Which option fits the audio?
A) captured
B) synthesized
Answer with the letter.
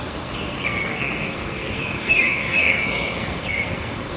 B